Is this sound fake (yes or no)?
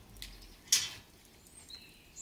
no